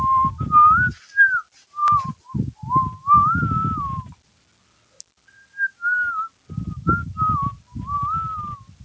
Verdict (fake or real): real